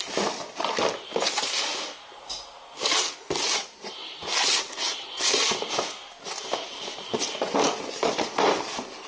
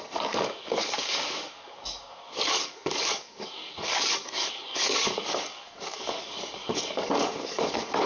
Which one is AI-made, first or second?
second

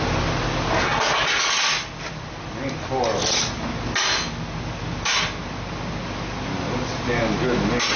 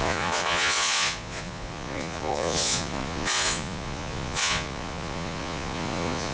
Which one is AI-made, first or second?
second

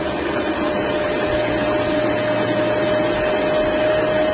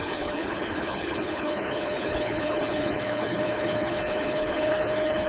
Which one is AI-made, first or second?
second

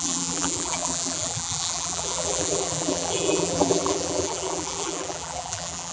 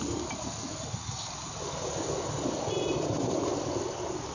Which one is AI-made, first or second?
first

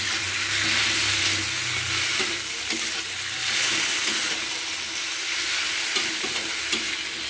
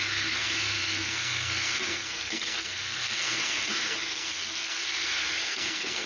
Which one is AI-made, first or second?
second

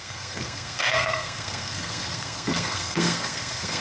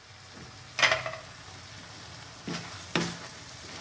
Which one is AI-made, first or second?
first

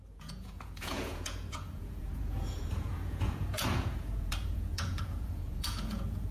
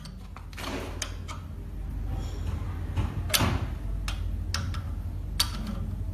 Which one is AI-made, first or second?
first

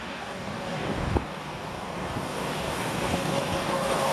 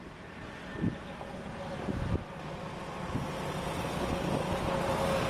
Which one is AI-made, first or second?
first